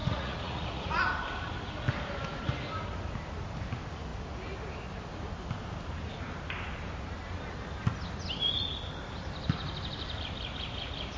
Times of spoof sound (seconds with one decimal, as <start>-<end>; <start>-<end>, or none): 0.0-1.0